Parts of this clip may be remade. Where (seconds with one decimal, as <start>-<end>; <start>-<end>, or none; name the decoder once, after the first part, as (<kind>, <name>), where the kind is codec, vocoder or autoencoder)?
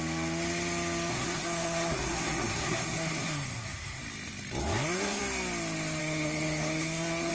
1.1-4.0 (codec, SNAC); 4.6-5.2; 6.0-7.3